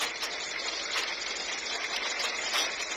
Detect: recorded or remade recorded